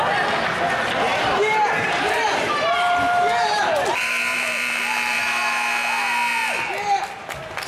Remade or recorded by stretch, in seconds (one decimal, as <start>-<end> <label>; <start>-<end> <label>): 0.0-1.1 recorded; 1.1-3.9 remade; 3.9-4.3 recorded; 4.3-5.2 remade; 5.2-7.7 recorded